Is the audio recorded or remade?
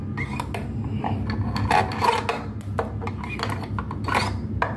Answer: recorded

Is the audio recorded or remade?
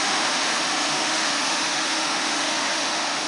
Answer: remade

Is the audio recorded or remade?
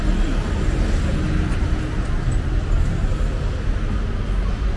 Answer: recorded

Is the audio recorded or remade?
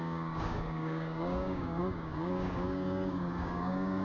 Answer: remade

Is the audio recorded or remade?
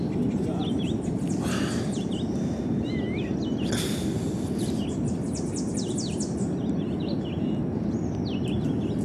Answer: recorded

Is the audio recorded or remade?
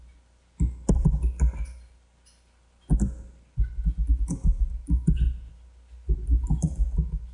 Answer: recorded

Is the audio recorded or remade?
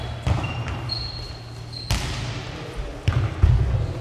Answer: recorded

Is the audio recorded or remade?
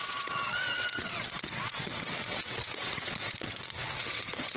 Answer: remade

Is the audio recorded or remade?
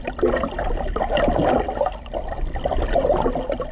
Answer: recorded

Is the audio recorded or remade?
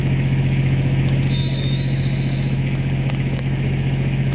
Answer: remade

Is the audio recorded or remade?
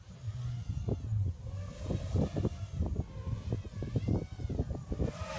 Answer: recorded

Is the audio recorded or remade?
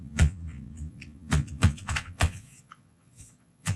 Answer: remade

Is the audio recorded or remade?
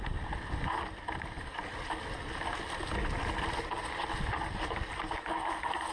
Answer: recorded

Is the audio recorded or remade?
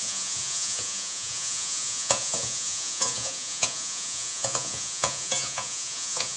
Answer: remade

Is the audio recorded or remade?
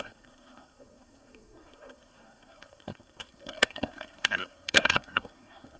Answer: remade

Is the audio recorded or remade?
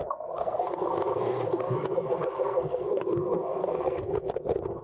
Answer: remade